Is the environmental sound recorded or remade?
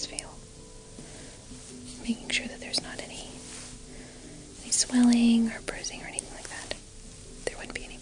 recorded